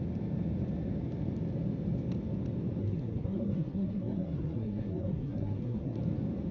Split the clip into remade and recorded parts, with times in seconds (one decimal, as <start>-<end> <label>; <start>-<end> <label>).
0.0-2.8 recorded; 2.8-6.0 remade; 6.0-6.5 recorded